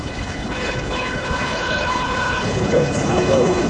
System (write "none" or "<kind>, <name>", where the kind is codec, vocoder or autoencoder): codec, HILCodec